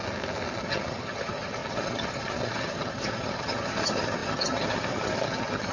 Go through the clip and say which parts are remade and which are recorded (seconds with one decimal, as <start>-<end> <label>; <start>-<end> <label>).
0.0-0.6 recorded; 0.6-5.7 remade